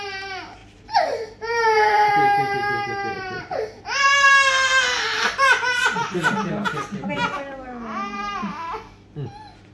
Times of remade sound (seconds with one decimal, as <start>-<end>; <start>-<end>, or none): 0.6-2.1; 5.8-6.3